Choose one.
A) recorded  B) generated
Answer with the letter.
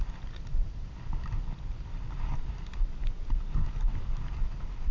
A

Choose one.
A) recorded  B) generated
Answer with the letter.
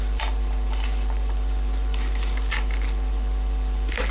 B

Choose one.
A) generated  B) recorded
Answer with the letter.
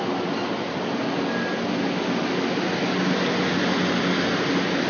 B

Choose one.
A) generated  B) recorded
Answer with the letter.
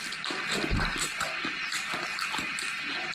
B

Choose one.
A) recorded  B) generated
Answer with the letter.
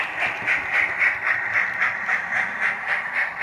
B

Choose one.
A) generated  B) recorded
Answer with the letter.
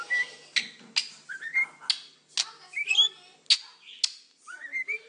B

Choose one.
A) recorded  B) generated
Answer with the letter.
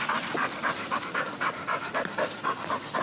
A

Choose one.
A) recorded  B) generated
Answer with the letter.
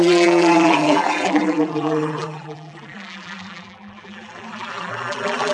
B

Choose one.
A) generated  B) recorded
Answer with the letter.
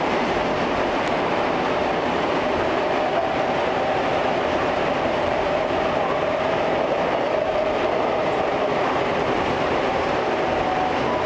A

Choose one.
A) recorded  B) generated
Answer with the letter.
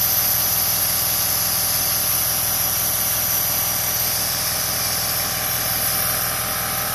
A